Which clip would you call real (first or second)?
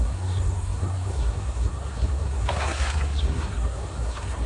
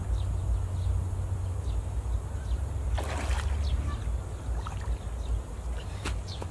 second